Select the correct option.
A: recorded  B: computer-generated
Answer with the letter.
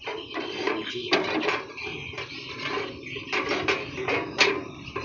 B